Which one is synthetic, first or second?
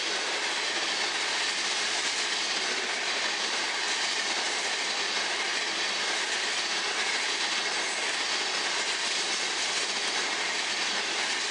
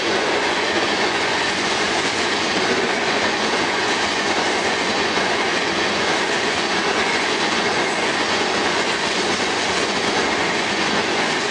second